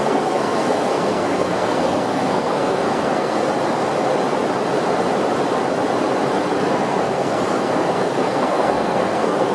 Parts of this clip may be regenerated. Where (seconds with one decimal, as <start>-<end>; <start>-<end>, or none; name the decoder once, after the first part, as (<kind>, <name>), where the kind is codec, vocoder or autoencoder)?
0.0-3.4 (codec, SNAC); 6.6-9.5